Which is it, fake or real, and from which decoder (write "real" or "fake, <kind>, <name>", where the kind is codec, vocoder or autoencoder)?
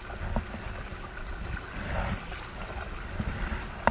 real